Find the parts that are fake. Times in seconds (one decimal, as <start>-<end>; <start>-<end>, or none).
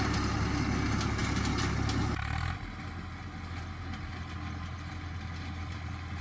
none